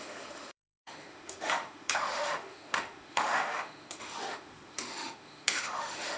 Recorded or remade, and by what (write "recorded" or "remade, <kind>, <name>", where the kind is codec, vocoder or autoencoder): remade, autoencoder, DAC-VAE